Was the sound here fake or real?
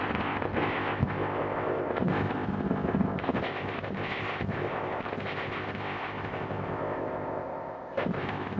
fake